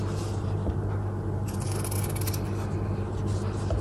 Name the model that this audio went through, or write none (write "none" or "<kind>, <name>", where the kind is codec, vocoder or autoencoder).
none